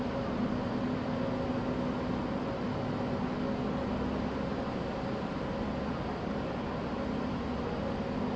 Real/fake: real